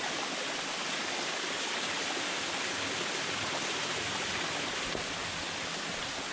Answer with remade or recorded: recorded